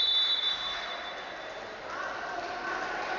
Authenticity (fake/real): real